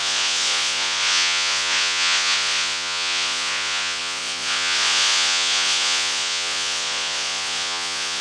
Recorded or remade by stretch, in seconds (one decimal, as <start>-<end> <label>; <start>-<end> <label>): 0.0-8.2 remade